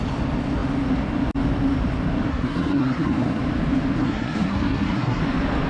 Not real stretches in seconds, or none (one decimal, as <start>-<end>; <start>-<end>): 2.3-3.4; 4.0-5.2